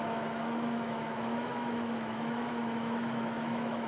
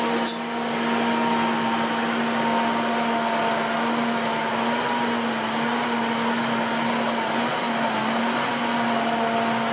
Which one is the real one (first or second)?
second